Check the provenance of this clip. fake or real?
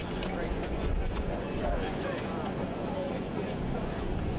fake